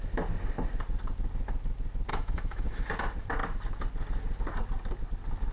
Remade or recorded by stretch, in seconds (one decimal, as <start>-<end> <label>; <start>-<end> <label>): 0.0-2.1 recorded; 2.1-2.9 remade; 2.9-5.5 recorded